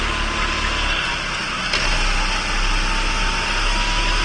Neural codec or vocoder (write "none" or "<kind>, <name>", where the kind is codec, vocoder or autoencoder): none